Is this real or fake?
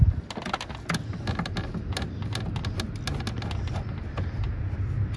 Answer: real